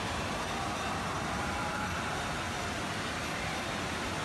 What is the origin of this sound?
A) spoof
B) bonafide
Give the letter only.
B